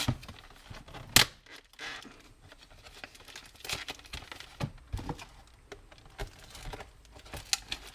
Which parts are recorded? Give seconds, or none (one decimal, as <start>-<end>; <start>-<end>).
0.0-7.9